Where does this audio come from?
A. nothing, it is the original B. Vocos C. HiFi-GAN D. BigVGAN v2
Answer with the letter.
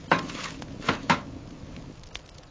A